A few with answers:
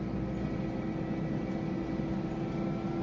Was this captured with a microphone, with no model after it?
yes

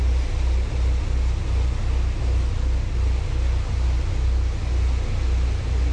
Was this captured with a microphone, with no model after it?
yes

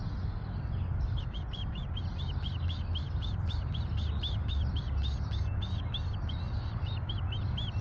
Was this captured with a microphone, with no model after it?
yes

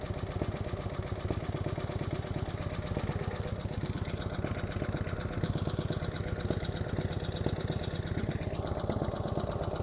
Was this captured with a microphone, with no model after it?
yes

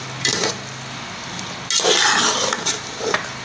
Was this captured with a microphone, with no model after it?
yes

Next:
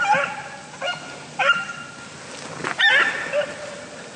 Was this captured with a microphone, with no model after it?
yes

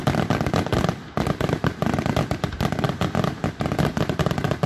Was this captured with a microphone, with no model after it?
yes